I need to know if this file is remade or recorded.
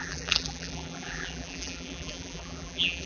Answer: remade